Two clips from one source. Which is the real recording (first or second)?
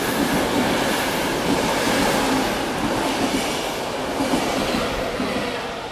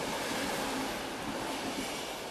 first